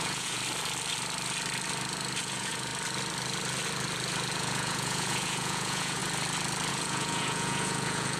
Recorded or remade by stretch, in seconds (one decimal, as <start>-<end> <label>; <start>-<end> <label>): 0.0-0.4 remade; 0.4-2.2 recorded; 2.2-2.7 remade; 2.7-4.3 recorded; 4.3-6.0 remade; 6.0-6.7 recorded; 6.7-8.2 remade